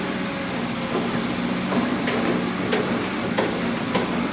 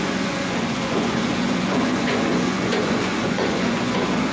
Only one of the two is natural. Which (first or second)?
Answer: first